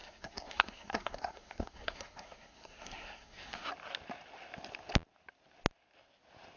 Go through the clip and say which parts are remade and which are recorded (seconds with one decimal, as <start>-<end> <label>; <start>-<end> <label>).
0.0-3.7 remade; 3.7-6.6 recorded